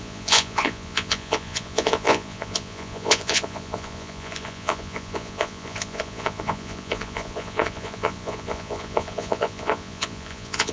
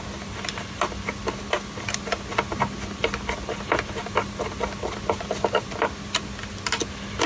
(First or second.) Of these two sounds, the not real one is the first